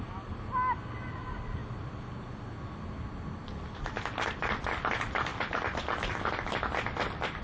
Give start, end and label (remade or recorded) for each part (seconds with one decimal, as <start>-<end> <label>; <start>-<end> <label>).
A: 0.0-7.4 recorded